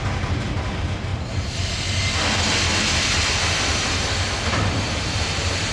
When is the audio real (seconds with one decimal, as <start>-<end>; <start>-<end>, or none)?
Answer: 1.1-4.5